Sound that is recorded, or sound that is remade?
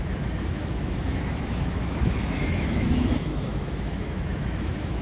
remade